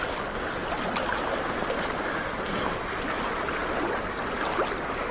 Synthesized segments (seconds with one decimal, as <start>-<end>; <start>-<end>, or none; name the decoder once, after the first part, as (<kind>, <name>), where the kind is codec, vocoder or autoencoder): 0.0-0.6 (vocoder, BigVGAN v2); 2.6-3.6